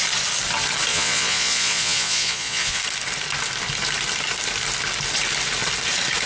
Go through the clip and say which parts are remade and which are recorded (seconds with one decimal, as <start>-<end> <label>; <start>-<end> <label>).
0.0-0.9 recorded; 0.9-2.8 remade; 2.8-6.3 recorded